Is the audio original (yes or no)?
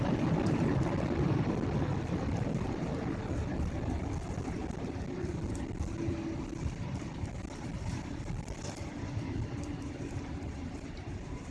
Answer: no